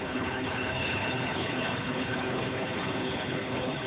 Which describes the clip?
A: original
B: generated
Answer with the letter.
B